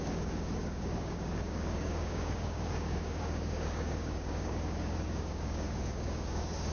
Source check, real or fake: fake